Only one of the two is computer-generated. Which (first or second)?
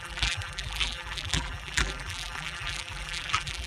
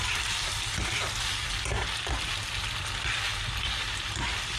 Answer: first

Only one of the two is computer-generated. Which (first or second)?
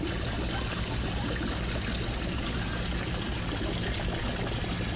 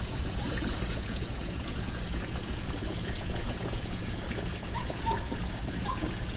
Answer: second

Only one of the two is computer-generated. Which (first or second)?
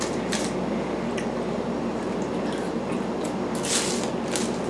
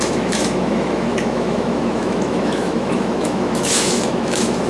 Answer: second